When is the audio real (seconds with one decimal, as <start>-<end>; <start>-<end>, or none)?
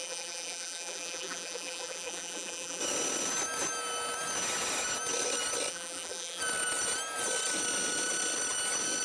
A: 2.8-5.7; 6.4-9.0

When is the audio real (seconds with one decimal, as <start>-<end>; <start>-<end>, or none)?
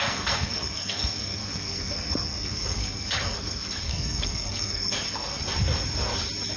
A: 5.4-6.6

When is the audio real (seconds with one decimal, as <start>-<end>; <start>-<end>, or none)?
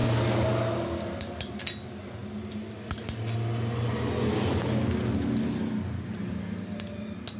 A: 0.0-7.4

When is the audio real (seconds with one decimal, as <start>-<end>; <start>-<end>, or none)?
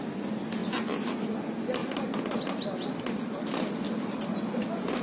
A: 0.0-5.0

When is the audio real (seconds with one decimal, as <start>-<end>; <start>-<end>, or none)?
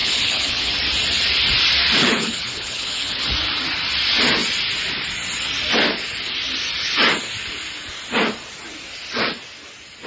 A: 0.7-2.0; 3.2-10.1